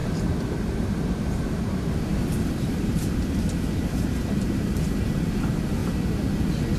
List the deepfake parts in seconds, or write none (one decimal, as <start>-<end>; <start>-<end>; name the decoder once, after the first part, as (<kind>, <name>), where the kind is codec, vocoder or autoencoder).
0.0-5.8 (vocoder, BigVGAN v2)